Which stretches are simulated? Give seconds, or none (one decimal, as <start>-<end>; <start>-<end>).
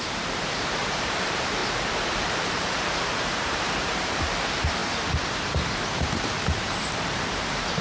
0.0-4.8; 5.4-7.8